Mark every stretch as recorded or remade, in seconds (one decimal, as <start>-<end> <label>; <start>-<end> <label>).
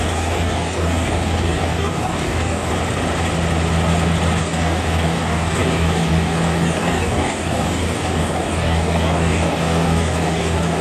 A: 0.0-2.7 remade; 2.7-4.4 recorded; 4.4-10.8 remade